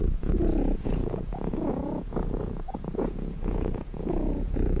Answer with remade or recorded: remade